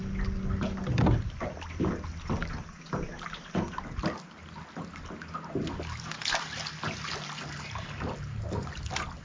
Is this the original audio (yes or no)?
yes